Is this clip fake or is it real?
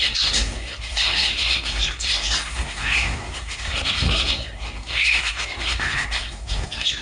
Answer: fake